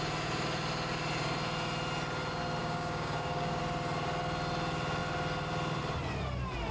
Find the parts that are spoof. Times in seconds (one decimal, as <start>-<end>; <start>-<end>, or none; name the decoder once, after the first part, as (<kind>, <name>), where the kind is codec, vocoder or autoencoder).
2.6-3.6 (codec, DAC)